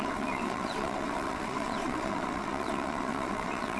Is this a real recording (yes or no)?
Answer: no